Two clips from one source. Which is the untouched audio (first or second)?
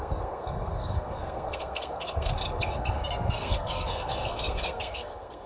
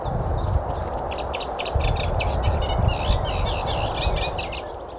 second